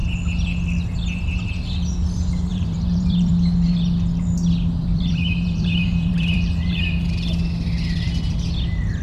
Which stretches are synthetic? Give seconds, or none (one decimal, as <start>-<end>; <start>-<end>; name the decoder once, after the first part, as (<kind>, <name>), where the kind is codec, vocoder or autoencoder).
2.5-3.3 (vocoder, BigVGAN v2); 4.8-6.8